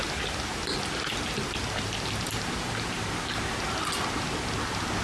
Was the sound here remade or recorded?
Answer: recorded